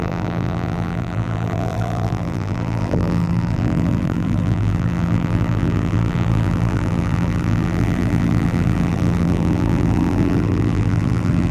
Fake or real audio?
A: fake